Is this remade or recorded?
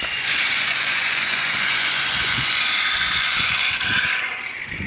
remade